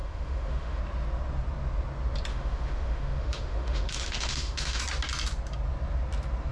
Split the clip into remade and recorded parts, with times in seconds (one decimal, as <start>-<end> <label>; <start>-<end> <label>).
0.0-0.8 remade; 0.8-2.3 recorded; 2.3-4.8 remade; 4.8-6.5 recorded